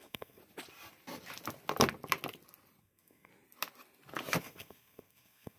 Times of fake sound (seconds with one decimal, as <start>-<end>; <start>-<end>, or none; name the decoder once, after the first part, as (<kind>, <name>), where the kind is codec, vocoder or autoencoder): 0.0-0.4 (codec, SNAC); 2.8-3.3; 4.4-5.6